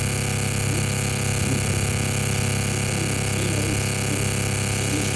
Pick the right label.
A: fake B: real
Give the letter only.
B